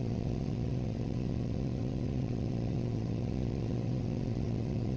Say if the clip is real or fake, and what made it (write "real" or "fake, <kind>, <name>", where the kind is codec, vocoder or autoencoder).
fake, vocoder, WaveNeXt